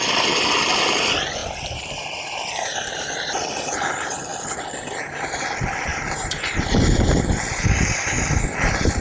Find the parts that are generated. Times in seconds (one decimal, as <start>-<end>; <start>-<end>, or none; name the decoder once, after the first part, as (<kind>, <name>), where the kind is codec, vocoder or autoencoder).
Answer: 1.4-2.0 (vocoder, BigVGAN v2); 5.9-8.1